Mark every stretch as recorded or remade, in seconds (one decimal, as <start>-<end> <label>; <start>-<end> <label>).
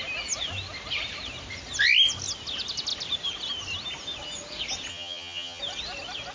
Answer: 0.0-4.9 recorded; 4.9-5.6 remade; 5.6-6.3 recorded